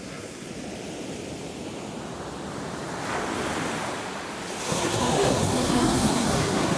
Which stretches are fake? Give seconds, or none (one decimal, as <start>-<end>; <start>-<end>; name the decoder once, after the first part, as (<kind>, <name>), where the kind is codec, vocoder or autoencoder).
0.0-0.5 (codec, SNAC); 4.6-6.8